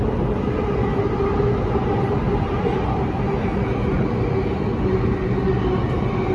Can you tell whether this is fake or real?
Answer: real